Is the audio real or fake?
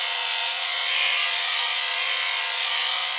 fake